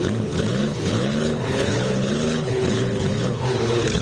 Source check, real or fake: fake